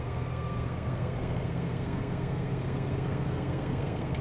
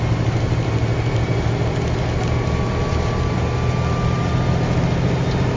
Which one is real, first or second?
second